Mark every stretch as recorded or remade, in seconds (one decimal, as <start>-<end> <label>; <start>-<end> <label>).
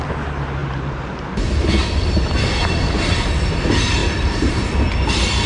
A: 0.0-0.6 recorded; 0.6-1.7 remade; 1.7-2.6 recorded; 2.6-3.3 remade; 3.3-4.0 recorded; 4.0-4.7 remade; 4.7-5.5 recorded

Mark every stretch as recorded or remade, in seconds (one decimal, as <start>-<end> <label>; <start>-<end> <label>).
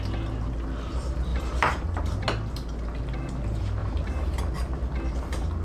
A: 0.0-1.3 recorded; 1.3-2.2 remade; 2.2-3.8 recorded; 3.8-4.4 remade; 4.4-5.6 recorded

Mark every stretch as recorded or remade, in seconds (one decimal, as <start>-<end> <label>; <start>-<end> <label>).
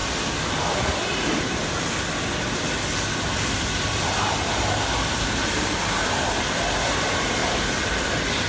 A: 0.0-8.5 recorded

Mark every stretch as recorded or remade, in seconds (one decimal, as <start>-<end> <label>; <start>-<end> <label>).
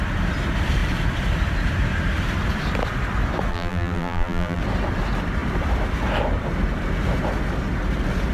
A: 0.0-3.5 recorded; 3.5-4.6 remade; 4.6-8.3 recorded